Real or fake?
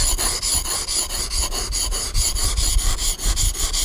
real